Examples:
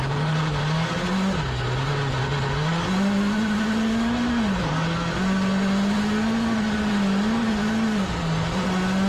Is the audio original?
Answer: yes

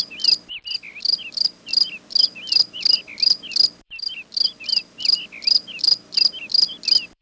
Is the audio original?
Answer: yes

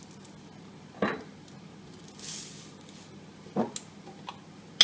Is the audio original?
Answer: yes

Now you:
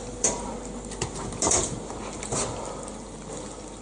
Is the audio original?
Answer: yes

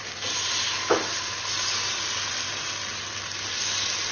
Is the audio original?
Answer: yes